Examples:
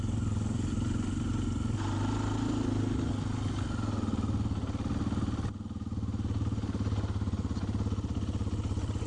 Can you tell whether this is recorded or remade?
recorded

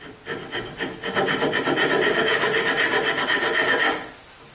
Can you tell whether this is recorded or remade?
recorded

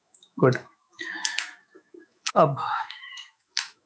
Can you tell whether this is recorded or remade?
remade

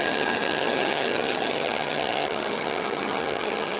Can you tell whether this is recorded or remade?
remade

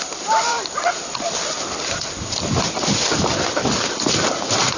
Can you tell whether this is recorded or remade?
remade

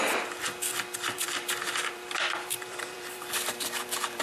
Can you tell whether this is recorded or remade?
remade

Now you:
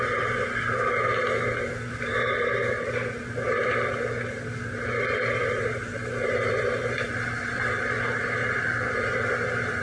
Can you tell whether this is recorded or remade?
recorded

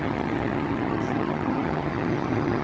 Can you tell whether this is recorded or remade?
remade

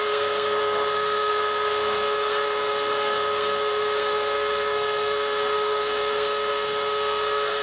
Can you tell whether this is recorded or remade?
remade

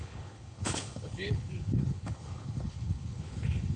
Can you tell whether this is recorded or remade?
remade